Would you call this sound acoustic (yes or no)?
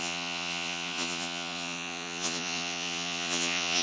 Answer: no